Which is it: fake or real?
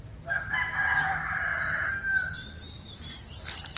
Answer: real